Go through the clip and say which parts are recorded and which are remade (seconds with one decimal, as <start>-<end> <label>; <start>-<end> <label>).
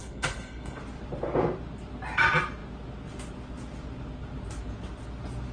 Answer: 0.0-0.8 remade; 0.8-5.5 recorded